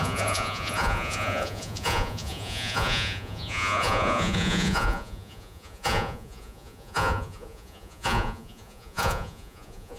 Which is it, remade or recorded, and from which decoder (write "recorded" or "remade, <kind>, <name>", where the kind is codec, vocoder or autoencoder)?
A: remade, vocoder, Vocos